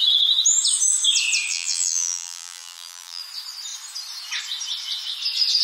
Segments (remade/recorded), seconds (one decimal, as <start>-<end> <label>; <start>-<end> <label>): 0.0-1.5 recorded; 1.5-3.2 remade; 3.2-5.6 recorded